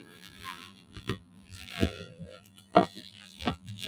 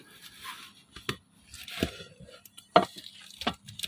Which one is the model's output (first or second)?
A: first